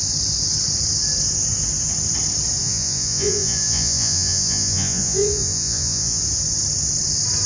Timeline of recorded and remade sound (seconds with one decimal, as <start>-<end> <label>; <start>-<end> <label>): 0.0-2.6 recorded; 2.6-6.2 remade; 6.2-7.5 recorded